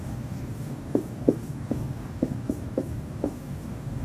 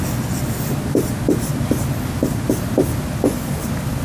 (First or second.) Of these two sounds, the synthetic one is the first